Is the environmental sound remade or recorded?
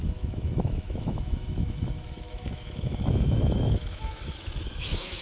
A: remade